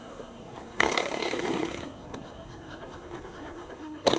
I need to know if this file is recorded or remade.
remade